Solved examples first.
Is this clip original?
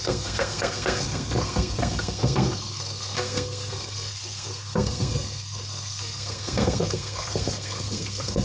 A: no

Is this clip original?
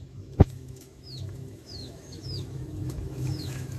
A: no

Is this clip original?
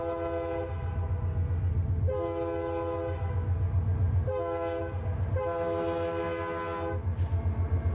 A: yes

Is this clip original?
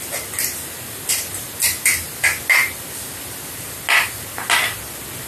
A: yes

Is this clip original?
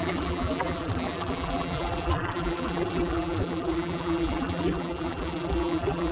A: no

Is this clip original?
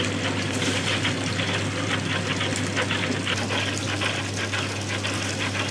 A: yes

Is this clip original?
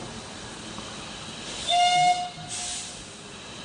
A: yes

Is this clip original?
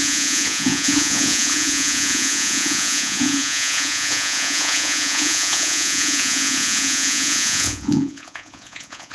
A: no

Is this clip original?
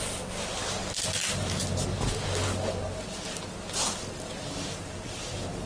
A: yes